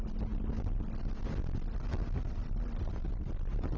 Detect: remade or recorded recorded